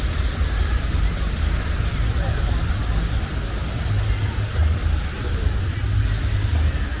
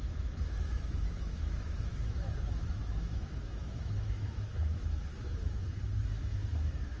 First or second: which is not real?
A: second